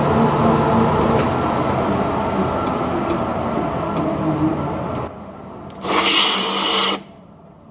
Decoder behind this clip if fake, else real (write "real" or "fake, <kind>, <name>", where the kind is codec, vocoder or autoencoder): real